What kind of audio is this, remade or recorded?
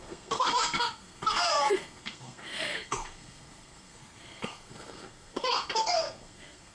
remade